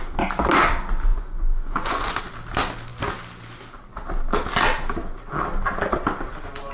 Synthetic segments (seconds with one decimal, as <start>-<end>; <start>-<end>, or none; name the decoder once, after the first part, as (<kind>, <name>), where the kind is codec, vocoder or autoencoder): 1.1-2.2 (vocoder, Vocos)